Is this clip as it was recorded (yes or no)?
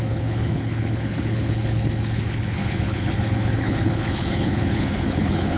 no